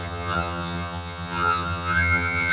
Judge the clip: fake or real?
fake